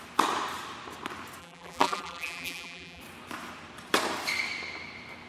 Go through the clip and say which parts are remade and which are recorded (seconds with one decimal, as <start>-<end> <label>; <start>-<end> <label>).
0.0-1.4 recorded; 1.4-3.0 remade; 3.0-5.3 recorded